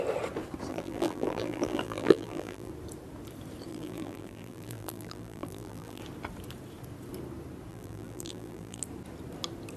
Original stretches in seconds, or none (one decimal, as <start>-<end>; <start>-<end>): 0.0-0.7; 2.7-3.7; 6.0-7.7; 8.8-9.8